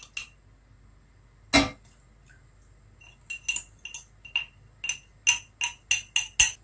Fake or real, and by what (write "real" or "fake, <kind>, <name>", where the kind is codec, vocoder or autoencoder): real